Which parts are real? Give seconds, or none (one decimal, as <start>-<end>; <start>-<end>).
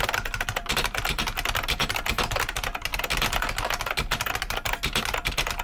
0.0-5.6